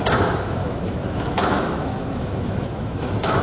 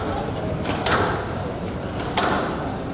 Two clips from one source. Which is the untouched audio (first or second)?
second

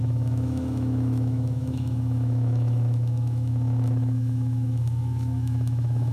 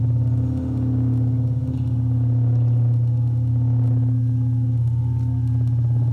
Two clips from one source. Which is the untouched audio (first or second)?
second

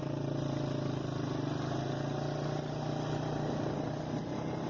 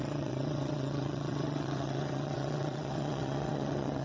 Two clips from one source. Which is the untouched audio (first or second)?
first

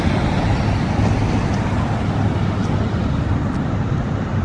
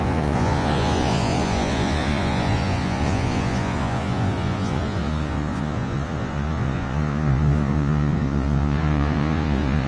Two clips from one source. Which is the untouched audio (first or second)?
first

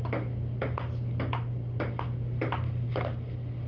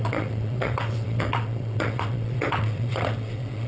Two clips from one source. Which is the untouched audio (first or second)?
first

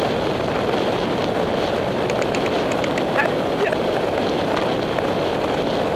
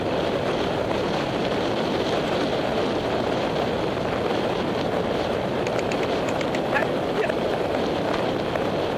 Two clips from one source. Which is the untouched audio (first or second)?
first